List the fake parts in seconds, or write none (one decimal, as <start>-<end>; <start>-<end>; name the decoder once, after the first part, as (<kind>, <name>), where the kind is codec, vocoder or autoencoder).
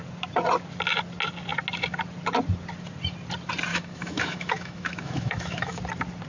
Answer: 3.7-5.8 (autoencoder, DAC-VAE)